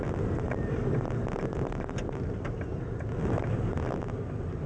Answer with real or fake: real